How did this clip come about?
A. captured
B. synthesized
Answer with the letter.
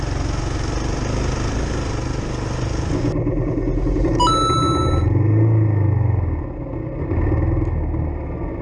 A